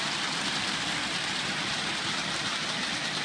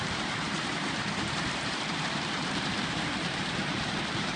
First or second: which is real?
first